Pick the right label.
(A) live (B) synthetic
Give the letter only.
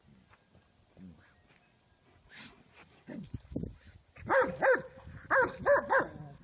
A